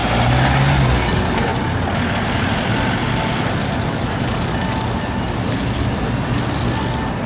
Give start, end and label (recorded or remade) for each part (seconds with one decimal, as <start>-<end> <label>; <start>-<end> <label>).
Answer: 0.0-7.3 recorded